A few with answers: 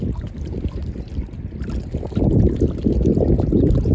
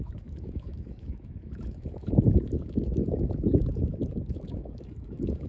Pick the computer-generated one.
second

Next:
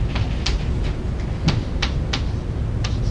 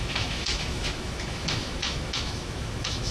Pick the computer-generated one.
second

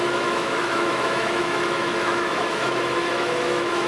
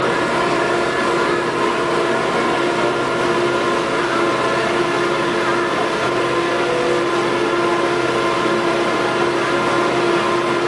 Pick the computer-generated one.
first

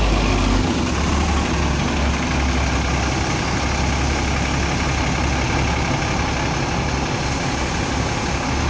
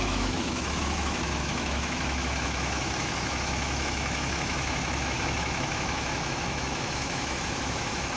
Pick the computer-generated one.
second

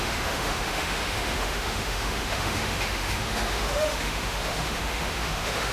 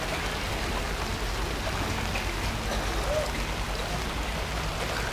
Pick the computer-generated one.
first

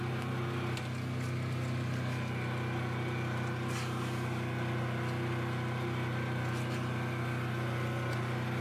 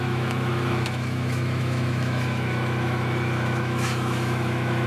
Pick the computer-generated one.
second